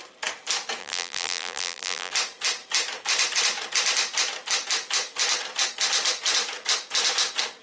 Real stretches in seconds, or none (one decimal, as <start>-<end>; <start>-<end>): 0.0-0.8; 2.1-7.6